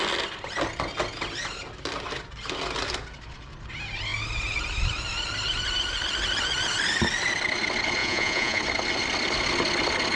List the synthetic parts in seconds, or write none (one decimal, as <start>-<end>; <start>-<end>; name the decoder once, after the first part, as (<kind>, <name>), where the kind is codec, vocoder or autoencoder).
8.0-8.6 (vocoder, Vocos)